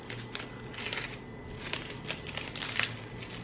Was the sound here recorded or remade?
recorded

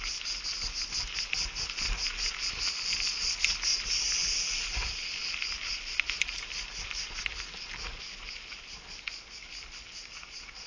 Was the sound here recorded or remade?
recorded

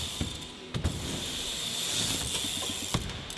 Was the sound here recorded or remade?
recorded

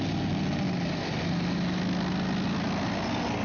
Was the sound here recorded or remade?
recorded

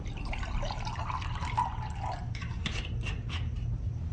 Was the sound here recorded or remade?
recorded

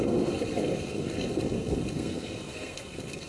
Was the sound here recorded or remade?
remade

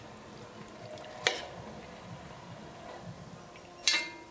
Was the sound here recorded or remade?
recorded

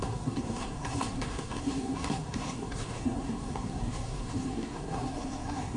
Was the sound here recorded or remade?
remade